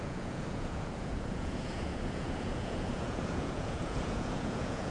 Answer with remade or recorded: remade